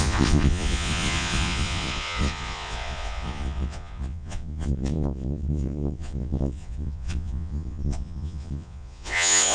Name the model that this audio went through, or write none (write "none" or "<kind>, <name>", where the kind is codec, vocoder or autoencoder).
vocoder, Vocos